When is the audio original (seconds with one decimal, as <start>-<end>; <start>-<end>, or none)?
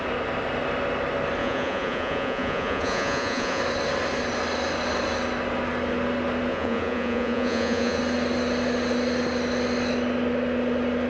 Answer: 0.0-1.4; 3.6-6.5; 8.0-11.1